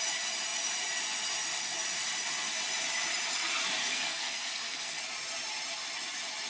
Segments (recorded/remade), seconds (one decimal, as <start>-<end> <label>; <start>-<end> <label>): 0.0-3.8 recorded; 3.8-5.0 remade; 5.0-6.5 recorded